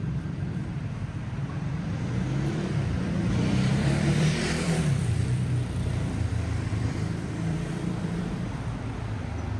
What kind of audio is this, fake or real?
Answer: fake